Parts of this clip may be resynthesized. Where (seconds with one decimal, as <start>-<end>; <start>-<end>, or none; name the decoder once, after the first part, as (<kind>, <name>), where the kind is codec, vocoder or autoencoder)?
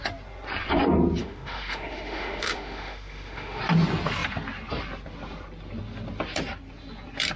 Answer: 1.2-3.6 (autoencoder, DAC-VAE)